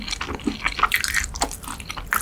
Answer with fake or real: real